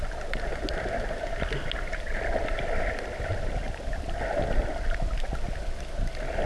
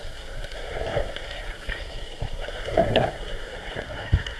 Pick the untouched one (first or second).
first